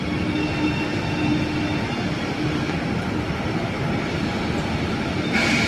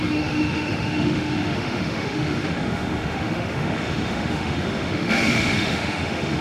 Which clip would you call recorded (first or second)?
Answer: first